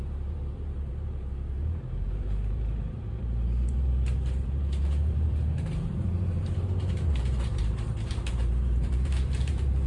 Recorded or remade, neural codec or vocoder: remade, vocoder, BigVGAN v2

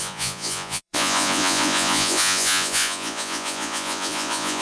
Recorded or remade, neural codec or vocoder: remade, vocoder, Vocos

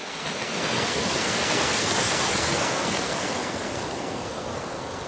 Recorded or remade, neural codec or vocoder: remade, codec, SNAC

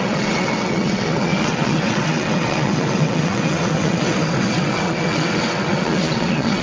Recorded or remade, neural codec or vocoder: remade, vocoder, WaveNeXt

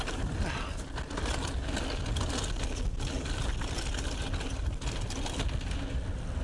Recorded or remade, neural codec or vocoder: recorded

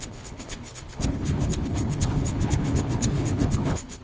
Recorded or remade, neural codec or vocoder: remade, codec, HILCodec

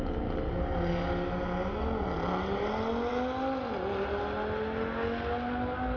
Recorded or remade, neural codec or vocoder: recorded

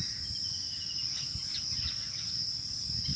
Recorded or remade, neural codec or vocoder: recorded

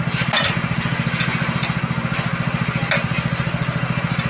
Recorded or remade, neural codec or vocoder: recorded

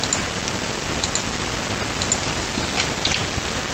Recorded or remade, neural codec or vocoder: recorded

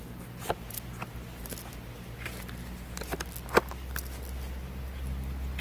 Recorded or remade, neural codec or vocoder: recorded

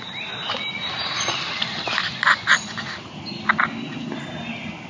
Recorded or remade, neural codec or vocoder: recorded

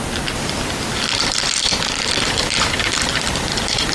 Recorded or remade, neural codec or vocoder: recorded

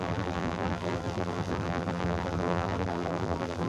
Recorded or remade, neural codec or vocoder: remade, vocoder, BigVGAN v2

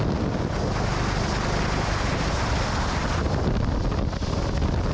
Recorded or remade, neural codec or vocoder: recorded